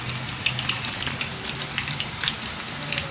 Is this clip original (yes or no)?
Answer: yes